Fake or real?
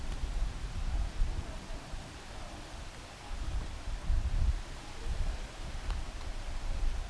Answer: fake